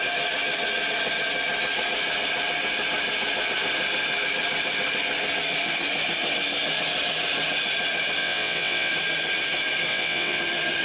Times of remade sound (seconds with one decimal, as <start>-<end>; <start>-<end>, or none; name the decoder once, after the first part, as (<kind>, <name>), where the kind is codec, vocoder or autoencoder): 8.2-8.9 (vocoder, WaveNeXt); 9.9-10.4